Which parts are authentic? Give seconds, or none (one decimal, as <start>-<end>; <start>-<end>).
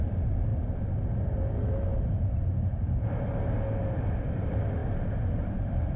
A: 0.5-4.1